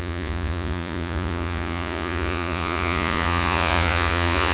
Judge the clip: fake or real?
fake